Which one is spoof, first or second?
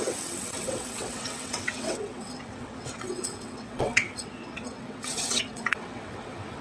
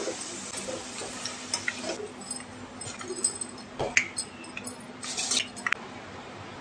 first